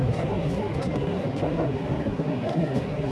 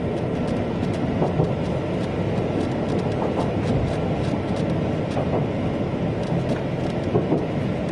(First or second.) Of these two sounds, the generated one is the first